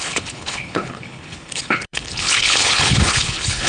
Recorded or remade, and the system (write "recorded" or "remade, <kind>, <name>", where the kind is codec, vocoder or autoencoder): remade, codec, HILCodec